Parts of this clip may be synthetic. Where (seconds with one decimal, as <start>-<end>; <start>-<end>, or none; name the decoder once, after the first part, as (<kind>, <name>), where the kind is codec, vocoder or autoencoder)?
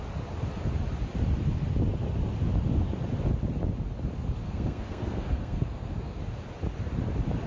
4.4-6.2 (codec, SNAC)